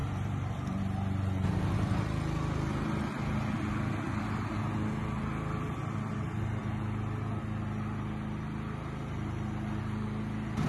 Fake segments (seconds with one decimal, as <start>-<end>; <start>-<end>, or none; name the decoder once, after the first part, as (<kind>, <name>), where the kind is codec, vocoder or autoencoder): 0.0-0.8 (vocoder, BigVGAN v2)